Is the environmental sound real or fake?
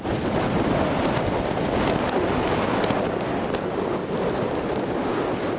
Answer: real